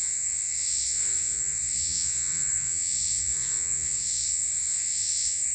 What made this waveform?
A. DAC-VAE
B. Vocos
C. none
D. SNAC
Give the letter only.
B